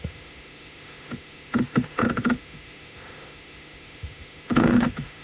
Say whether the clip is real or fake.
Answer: fake